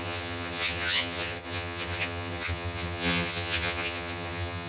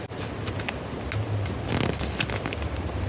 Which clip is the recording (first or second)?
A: second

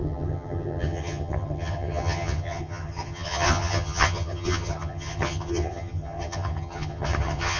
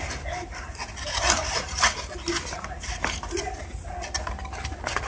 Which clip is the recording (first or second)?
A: second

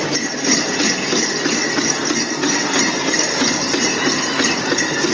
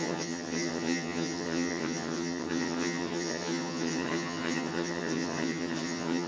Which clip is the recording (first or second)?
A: first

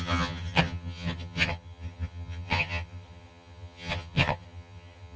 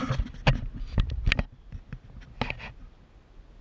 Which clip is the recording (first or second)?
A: second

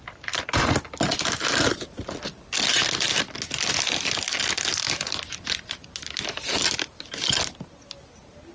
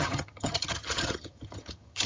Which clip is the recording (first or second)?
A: first